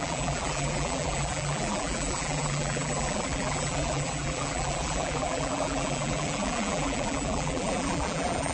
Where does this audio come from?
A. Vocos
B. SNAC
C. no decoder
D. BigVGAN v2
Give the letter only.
D